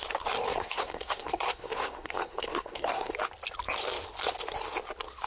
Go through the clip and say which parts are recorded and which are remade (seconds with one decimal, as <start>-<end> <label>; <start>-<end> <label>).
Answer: 0.0-0.5 recorded; 0.5-3.1 remade; 3.1-5.3 recorded